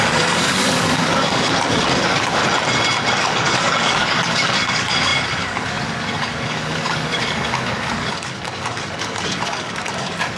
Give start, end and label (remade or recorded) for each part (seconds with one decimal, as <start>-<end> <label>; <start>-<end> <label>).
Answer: 0.0-2.4 remade; 2.4-3.1 recorded; 3.1-10.4 remade